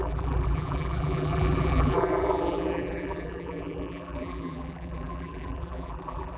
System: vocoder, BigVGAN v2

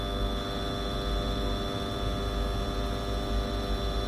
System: none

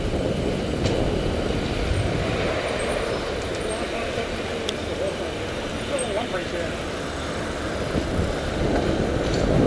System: none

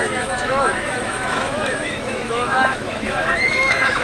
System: autoencoder, DAC-VAE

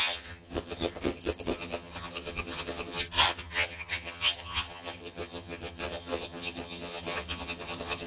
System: vocoder, HiFi-GAN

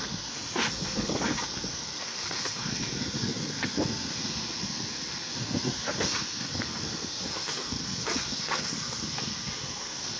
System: codec, SNAC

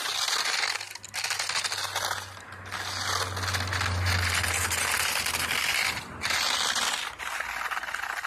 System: none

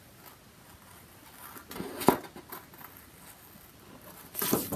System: none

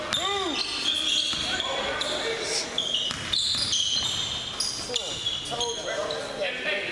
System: none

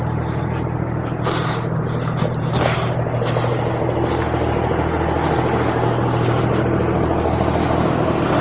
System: none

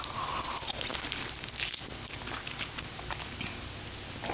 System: none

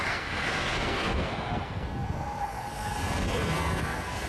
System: codec, SNAC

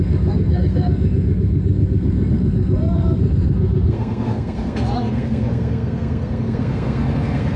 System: codec, SNAC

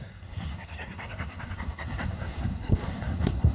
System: codec, SNAC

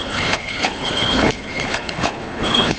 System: codec, HILCodec